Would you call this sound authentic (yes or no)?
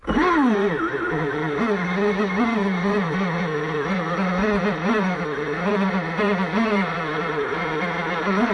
no